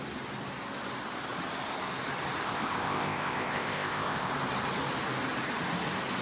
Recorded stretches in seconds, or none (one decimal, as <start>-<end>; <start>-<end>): 0.0-2.4; 4.3-6.2